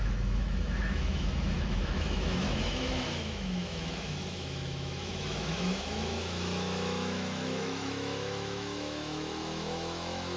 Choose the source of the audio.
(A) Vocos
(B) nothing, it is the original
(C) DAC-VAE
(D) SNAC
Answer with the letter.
C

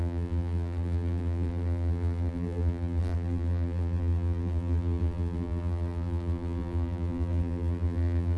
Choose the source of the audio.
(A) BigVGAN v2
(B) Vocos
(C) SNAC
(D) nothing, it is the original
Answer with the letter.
A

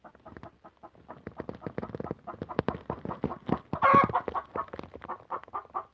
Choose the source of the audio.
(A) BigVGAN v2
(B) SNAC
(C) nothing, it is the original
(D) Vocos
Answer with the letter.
C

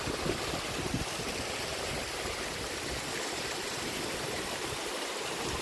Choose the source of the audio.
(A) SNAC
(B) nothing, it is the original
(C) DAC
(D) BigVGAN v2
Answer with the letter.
B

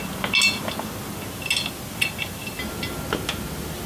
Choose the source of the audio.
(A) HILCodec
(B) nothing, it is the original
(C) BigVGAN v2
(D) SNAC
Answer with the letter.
B